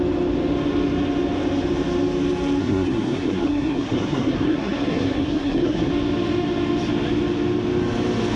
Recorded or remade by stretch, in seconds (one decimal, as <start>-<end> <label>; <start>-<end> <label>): 0.0-2.6 recorded; 2.6-5.9 remade; 5.9-8.4 recorded